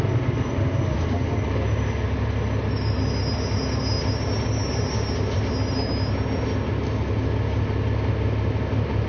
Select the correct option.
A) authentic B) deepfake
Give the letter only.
A